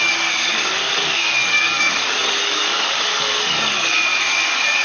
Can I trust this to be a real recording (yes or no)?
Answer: no